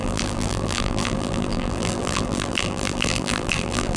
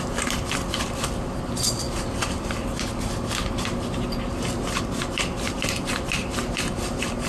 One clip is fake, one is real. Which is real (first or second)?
second